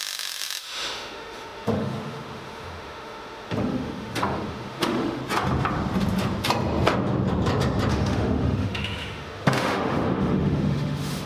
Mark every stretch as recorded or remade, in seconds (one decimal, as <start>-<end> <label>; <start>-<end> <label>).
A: 0.0-5.2 remade; 5.2-7.9 recorded; 7.9-11.3 remade